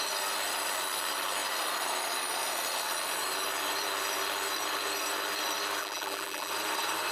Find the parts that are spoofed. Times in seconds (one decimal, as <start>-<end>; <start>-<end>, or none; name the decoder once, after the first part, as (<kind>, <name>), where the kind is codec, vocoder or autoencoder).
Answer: 5.8-6.5 (vocoder, BigVGAN v2)